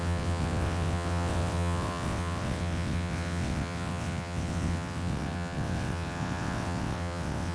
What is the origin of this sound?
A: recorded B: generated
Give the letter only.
B